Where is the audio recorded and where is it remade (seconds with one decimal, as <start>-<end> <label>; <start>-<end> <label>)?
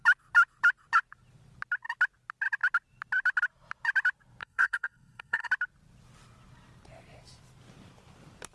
0.0-4.4 recorded; 4.4-5.5 remade; 5.5-8.5 recorded